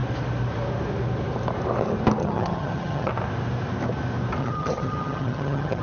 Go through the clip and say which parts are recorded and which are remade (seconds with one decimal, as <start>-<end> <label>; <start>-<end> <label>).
0.0-2.2 recorded; 2.2-3.1 remade; 3.1-4.4 recorded; 4.4-5.8 remade